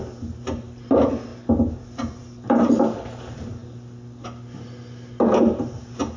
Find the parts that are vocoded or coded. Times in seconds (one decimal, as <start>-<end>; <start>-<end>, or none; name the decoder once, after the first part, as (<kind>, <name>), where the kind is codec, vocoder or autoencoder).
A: none